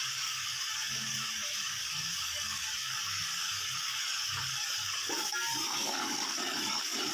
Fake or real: fake